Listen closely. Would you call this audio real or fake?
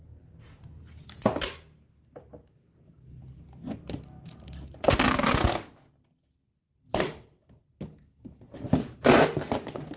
real